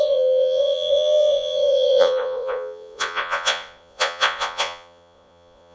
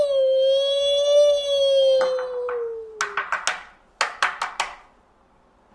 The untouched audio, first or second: second